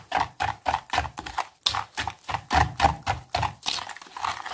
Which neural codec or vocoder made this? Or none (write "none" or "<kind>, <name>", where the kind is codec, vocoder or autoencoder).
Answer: none